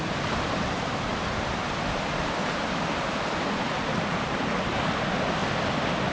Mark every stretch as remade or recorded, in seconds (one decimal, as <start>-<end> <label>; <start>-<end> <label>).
0.0-1.1 recorded; 1.1-4.8 remade; 4.8-6.1 recorded